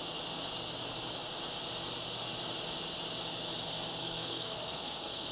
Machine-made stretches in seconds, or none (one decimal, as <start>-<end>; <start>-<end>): 4.0-5.3